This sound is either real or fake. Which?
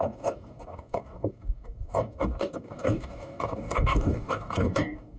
fake